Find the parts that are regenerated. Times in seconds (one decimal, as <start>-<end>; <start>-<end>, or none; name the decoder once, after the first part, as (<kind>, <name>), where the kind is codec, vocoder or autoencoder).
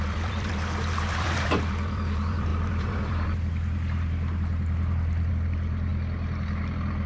0.0-5.9 (vocoder, BigVGAN v2); 6.6-7.1